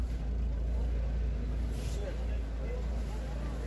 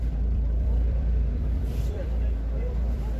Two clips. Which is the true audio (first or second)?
first